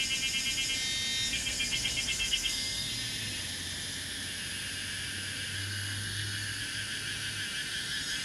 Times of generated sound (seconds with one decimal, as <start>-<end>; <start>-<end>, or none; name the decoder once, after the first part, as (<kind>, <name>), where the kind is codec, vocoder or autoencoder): 1.3-2.9 (codec, SNAC); 5.6-6.6